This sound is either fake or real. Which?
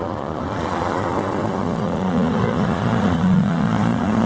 fake